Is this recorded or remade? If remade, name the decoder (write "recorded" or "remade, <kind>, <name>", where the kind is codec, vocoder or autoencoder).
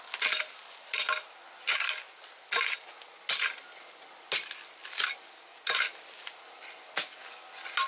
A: recorded